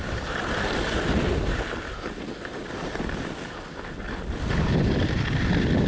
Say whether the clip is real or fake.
real